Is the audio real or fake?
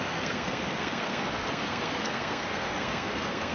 fake